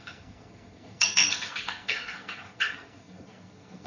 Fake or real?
fake